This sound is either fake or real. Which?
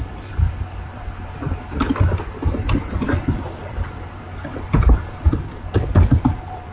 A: fake